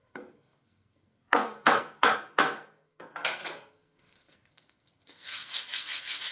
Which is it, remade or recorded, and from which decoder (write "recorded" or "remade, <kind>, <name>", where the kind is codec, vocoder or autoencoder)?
remade, codec, SNAC